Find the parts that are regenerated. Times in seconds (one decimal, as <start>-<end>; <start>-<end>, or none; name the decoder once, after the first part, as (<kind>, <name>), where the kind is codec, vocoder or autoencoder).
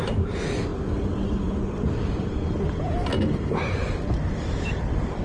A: none